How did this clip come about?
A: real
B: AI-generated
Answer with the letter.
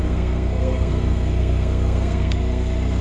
B